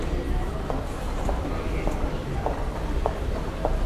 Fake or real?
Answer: real